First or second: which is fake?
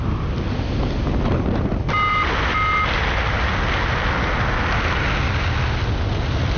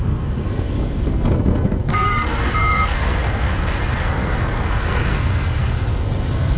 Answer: second